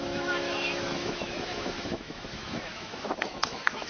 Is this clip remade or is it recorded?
remade